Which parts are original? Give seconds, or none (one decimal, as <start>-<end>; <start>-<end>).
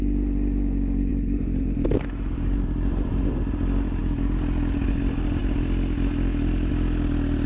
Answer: 0.0-1.1; 3.4-7.5